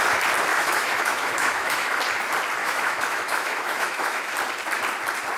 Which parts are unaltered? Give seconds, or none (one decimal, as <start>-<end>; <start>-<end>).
0.0-0.5; 2.0-2.6; 4.3-5.4